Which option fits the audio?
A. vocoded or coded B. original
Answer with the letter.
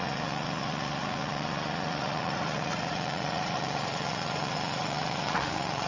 A